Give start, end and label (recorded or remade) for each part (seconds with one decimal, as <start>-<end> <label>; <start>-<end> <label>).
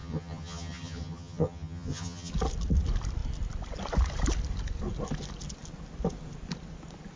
0.0-2.3 remade; 2.3-7.2 recorded